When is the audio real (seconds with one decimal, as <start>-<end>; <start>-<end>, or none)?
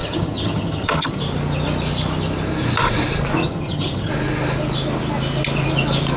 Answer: 1.2-3.4; 4.1-6.2